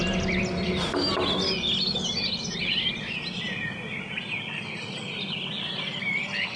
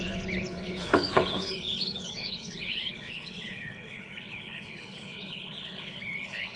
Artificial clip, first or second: second